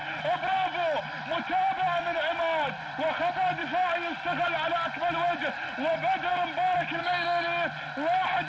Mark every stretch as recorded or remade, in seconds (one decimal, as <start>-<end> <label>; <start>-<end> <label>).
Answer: 0.0-8.5 recorded